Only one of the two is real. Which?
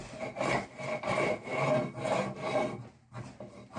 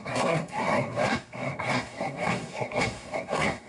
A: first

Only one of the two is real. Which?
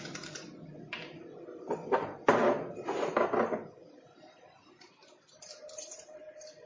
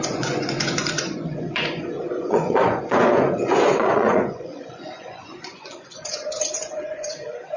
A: first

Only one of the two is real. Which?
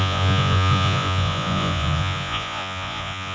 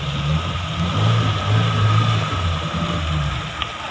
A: second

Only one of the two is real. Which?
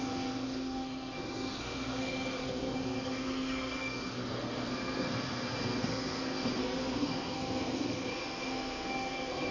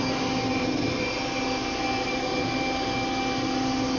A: second